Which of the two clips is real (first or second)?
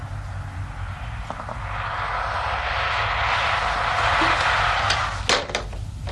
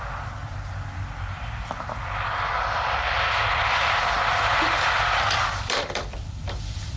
first